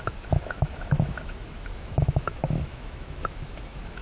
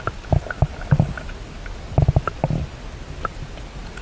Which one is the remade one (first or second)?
first